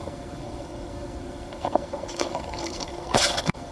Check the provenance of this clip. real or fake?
fake